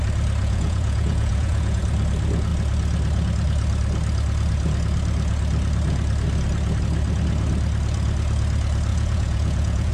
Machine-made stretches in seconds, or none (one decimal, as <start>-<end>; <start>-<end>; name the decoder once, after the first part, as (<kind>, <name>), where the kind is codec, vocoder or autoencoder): 0.4-1.8 (vocoder, Vocos); 8.9-9.9